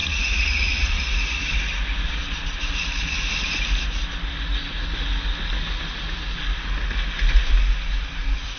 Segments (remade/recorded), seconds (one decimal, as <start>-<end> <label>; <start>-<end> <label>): 0.0-1.4 remade; 1.4-8.6 recorded